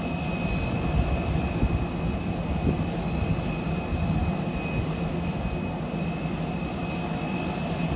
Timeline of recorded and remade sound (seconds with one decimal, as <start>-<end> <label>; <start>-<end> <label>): 0.0-8.0 recorded